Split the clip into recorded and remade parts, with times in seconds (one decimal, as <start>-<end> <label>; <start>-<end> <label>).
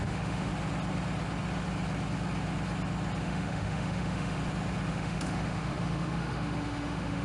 0.0-0.5 remade; 0.5-3.2 recorded; 3.2-4.4 remade; 4.4-4.9 recorded; 4.9-7.2 remade